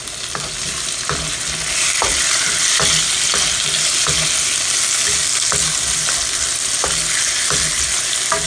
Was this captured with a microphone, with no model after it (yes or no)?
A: yes